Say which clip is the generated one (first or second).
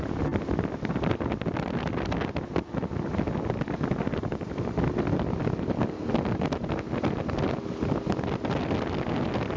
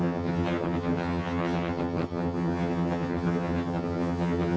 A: second